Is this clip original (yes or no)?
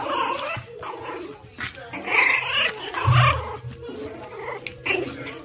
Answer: yes